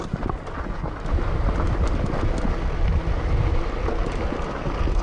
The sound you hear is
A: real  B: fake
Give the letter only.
A